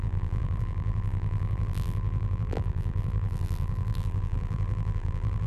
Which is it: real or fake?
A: fake